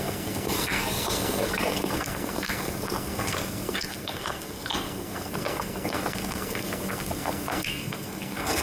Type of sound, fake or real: fake